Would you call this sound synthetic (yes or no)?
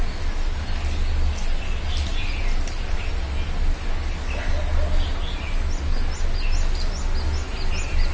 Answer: no